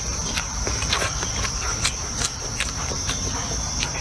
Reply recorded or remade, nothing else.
remade